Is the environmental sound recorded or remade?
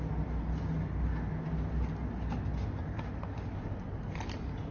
recorded